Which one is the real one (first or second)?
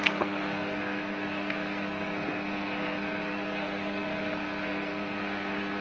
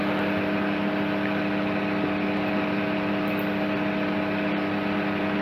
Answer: second